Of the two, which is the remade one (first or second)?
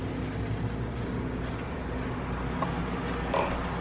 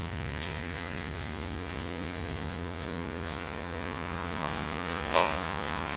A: second